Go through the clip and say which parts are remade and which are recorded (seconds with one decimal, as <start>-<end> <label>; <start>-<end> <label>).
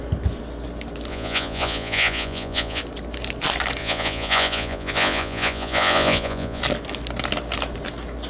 0.0-1.1 recorded; 1.1-2.8 remade; 2.8-3.8 recorded; 3.8-6.6 remade; 6.6-8.3 recorded